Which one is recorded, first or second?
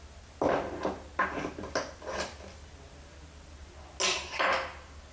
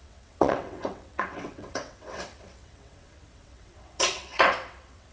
first